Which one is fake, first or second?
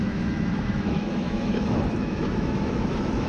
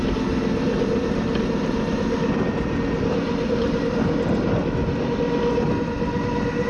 first